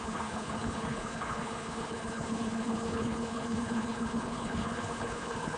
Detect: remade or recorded remade